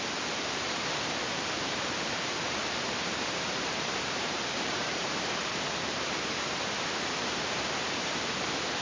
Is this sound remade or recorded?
remade